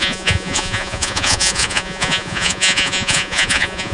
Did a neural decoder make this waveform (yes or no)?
yes